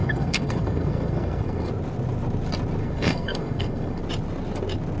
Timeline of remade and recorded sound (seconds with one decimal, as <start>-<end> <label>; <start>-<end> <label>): 0.0-1.7 remade; 1.7-2.8 recorded; 2.8-4.0 remade; 4.0-5.0 recorded